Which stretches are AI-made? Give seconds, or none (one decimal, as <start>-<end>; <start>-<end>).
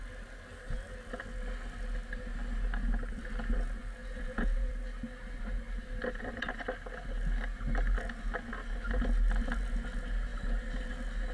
4.0-4.7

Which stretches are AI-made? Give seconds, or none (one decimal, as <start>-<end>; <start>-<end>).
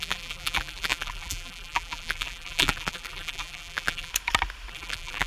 0.0-4.1; 4.7-5.3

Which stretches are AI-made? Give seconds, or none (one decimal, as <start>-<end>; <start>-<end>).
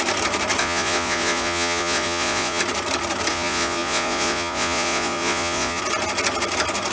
0.6-2.6; 3.3-5.8